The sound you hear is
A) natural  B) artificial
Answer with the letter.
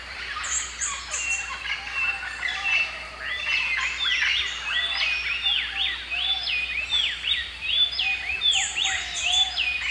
A